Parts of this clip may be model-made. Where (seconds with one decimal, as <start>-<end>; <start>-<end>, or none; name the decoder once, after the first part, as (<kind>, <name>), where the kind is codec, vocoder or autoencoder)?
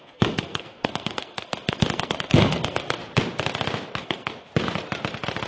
0.0-3.0 (codec, SNAC); 4.0-4.5